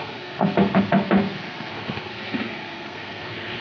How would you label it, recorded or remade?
remade